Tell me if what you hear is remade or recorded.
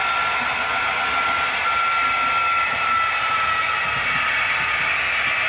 recorded